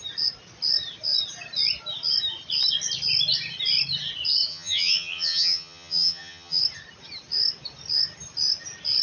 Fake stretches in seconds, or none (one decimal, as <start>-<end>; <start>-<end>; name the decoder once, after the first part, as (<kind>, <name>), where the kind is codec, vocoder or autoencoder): 4.5-6.6 (vocoder, HiFi-GAN)